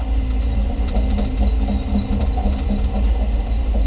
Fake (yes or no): no